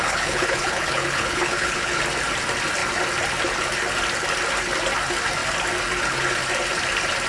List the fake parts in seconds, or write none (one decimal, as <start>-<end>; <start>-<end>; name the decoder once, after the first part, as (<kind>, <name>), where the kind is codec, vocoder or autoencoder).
0.0-2.0 (codec, HILCodec)